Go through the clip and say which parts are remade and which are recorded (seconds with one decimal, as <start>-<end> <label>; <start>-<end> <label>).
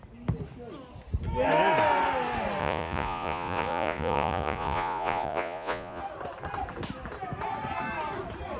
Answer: 0.0-2.6 recorded; 2.6-6.0 remade; 6.0-8.6 recorded